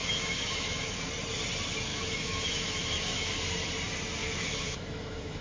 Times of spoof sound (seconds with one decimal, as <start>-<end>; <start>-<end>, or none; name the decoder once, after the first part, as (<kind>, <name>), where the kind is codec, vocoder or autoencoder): 0.0-1.1 (autoencoder, DAC-VAE); 1.9-3.3; 4.2-5.4